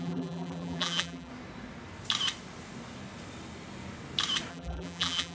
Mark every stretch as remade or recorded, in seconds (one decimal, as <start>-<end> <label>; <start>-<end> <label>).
0.0-1.3 remade; 1.3-4.5 recorded; 4.5-5.3 remade